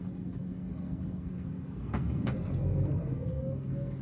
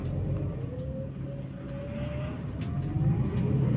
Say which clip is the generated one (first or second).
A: first